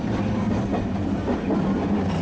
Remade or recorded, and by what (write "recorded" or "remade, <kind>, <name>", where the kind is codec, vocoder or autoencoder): recorded